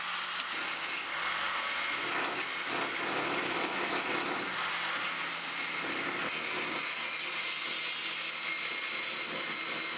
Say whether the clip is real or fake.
real